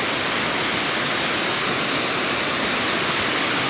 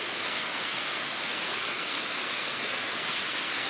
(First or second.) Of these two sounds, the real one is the first